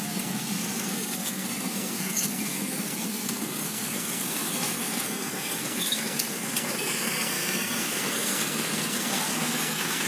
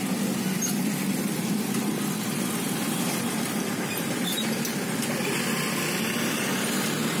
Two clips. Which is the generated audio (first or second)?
first